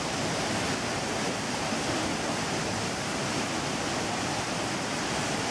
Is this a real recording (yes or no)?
yes